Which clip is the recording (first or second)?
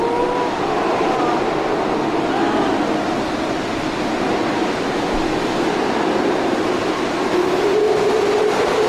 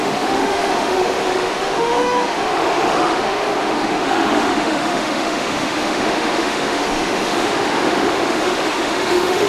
first